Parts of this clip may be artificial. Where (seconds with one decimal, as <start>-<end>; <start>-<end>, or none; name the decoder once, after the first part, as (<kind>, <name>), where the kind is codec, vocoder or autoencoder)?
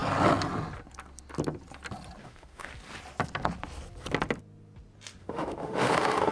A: 2.2-2.7 (autoencoder, DAC-VAE); 5.2-6.3